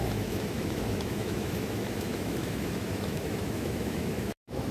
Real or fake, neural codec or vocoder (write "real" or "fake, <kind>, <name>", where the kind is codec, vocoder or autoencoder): fake, autoencoder, DAC-VAE